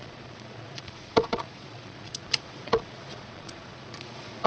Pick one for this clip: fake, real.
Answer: fake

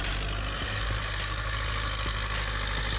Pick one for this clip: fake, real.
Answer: real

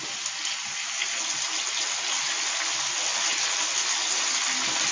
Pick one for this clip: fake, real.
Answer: real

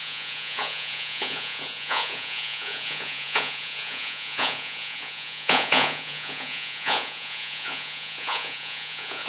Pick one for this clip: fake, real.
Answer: fake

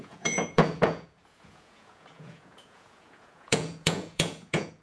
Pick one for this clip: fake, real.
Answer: fake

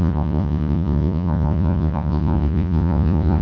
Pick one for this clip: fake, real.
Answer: fake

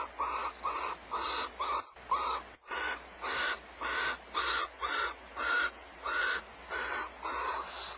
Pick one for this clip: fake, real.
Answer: real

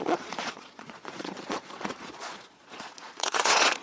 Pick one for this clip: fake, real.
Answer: fake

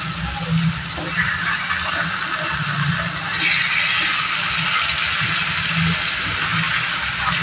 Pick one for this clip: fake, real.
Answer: real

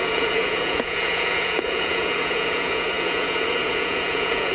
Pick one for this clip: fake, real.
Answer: fake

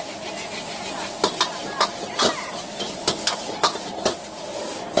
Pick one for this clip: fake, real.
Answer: real